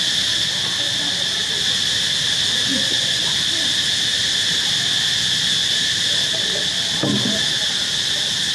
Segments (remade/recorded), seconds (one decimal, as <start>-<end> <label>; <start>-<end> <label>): 0.0-2.7 recorded; 2.7-3.4 remade; 3.4-8.5 recorded